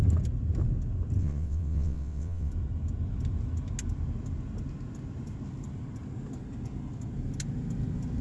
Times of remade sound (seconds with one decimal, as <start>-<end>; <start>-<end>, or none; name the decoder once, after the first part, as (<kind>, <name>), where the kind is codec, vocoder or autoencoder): 1.2-2.5 (vocoder, WaveNeXt)